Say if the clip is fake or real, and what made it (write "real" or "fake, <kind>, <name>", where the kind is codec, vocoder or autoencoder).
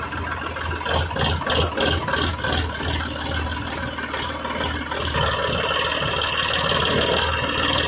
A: real